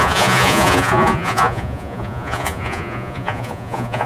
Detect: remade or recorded remade